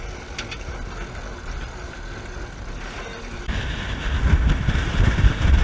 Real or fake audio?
real